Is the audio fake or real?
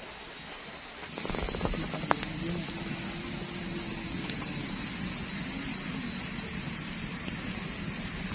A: real